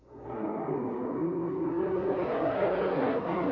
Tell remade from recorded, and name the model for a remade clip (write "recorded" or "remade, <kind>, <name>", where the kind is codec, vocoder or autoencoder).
remade, codec, SNAC